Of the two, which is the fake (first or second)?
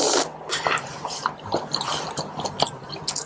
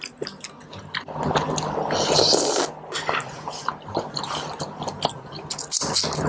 first